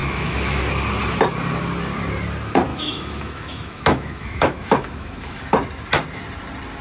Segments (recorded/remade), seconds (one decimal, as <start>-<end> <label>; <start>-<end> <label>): 0.0-0.6 remade; 0.6-2.7 recorded; 2.7-5.4 remade; 5.4-6.8 recorded